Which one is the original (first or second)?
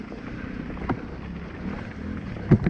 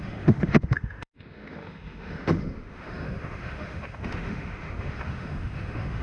first